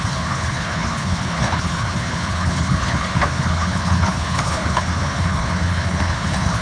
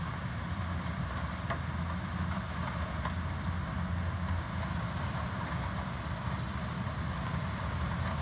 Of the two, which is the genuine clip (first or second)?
second